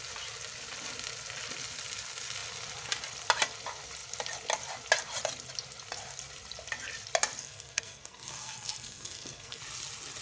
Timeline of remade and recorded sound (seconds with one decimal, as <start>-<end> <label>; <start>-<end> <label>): 0.0-7.4 recorded; 7.4-9.6 remade; 9.6-10.2 recorded